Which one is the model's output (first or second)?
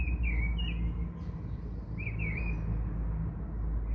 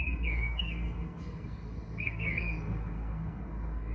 second